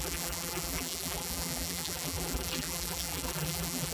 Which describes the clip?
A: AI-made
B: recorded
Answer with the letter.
A